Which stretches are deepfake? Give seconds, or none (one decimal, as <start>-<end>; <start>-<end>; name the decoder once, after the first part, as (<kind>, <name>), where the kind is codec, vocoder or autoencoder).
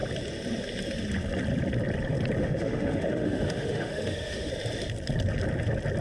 2.4-4.5 (autoencoder, DAC-VAE)